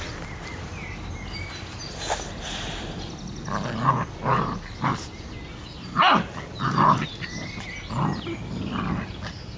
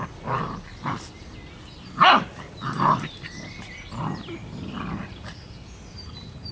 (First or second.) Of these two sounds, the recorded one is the first